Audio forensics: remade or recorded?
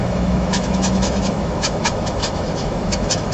remade